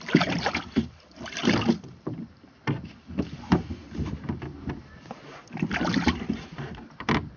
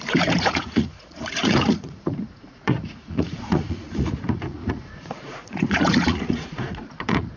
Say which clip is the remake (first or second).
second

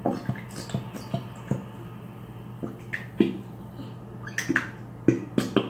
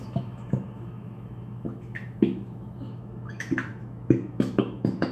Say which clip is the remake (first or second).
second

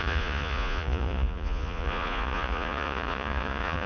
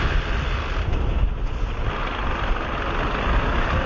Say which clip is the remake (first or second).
first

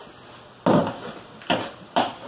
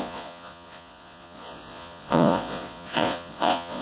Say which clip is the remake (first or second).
second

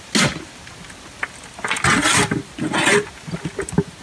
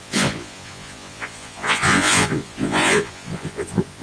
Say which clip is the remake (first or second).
second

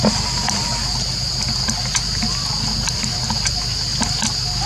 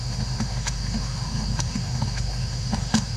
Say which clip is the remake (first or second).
second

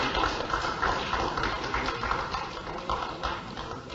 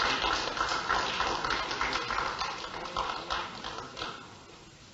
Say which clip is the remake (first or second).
first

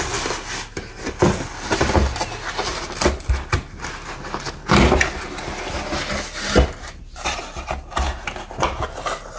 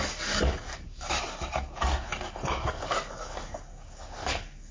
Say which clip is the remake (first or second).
second